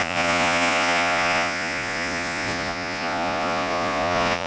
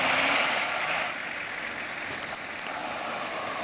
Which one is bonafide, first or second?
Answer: second